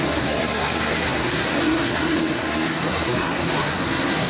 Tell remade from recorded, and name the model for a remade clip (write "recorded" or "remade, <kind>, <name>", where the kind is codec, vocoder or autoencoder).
remade, codec, SNAC